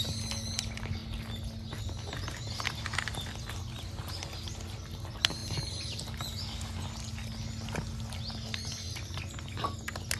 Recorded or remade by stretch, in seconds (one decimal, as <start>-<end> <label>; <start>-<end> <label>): 0.0-10.2 recorded